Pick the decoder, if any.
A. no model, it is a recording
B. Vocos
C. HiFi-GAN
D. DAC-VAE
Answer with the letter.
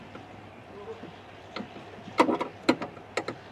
A